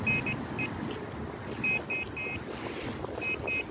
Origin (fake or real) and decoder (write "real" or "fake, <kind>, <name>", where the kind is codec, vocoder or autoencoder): real